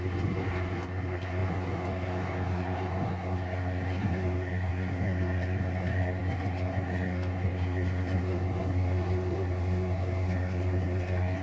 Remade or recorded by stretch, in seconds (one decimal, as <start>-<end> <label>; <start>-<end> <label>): 0.0-11.4 remade